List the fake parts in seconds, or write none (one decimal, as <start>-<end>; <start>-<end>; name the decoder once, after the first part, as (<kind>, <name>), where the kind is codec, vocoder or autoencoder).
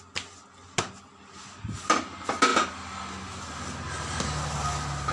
none